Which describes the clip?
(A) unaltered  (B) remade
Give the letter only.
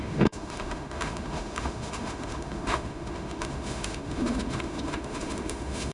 B